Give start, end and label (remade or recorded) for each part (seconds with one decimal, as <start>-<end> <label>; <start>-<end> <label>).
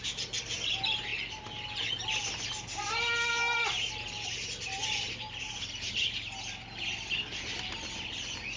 0.0-8.6 recorded